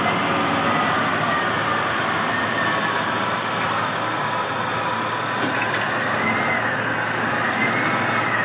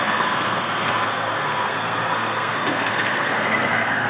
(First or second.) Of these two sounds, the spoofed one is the second